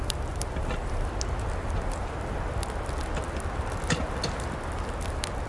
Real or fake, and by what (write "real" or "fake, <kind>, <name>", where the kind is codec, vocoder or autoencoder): real